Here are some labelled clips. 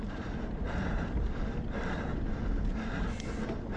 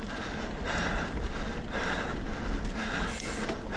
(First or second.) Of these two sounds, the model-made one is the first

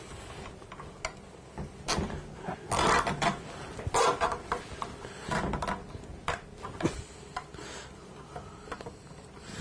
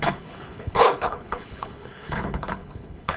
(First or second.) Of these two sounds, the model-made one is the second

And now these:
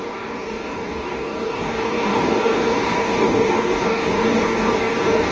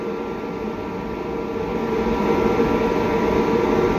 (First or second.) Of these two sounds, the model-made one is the first